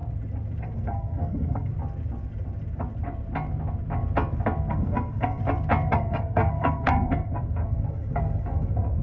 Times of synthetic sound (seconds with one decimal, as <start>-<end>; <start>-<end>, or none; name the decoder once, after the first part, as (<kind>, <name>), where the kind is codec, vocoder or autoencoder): 0.6-1.7 (codec, SNAC); 4.7-5.4; 5.9-9.0